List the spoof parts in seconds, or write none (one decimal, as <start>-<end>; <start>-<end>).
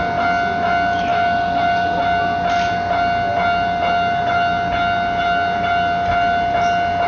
none